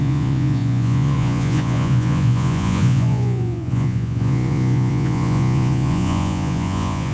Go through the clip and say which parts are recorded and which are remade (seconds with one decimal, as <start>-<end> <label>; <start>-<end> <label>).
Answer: 0.0-7.1 remade